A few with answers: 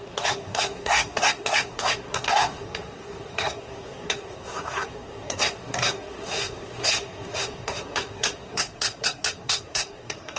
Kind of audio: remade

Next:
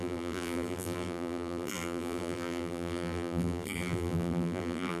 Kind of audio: remade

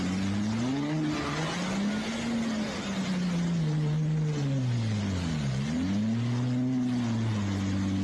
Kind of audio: recorded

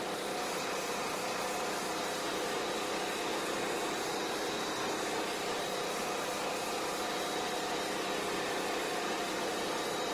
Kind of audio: recorded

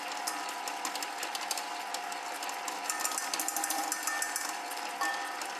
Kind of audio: recorded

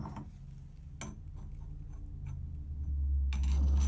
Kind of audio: recorded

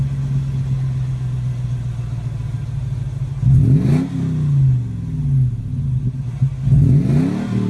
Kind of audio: recorded